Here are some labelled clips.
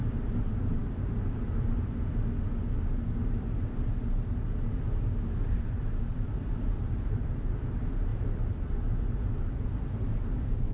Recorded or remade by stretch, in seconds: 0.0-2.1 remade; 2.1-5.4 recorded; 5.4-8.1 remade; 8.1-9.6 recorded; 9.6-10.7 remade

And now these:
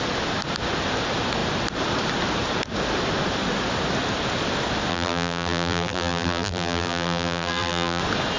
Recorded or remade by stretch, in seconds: 0.0-4.9 recorded; 4.9-8.0 remade; 8.0-8.4 recorded